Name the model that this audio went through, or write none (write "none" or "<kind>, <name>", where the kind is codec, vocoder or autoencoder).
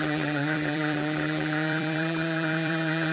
vocoder, BigVGAN v2